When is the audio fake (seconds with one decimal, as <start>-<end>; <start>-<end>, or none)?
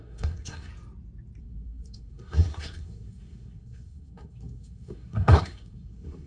0.0-0.7; 1.4-6.3